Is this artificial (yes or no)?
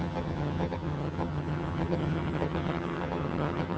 yes